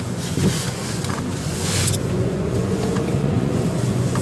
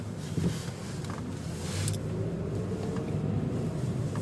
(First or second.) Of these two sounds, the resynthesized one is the first